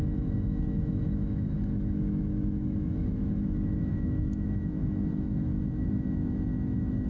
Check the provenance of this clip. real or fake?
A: fake